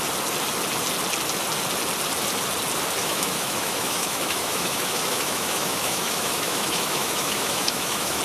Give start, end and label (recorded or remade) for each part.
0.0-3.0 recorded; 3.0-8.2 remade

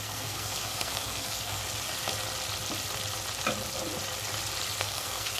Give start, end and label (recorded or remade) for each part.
0.0-1.6 remade; 1.6-4.8 recorded; 4.8-5.4 remade